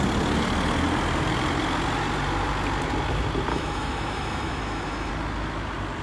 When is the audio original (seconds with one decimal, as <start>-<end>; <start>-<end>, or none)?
0.0-3.5; 5.1-6.0